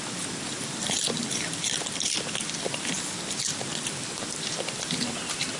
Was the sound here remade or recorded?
remade